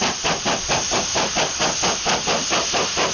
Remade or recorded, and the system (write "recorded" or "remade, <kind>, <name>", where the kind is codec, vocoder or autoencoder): recorded